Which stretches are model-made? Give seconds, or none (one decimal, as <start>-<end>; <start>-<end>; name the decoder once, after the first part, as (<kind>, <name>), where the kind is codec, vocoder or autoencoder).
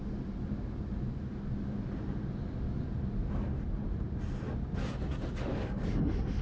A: 5.5-6.0 (codec, DAC)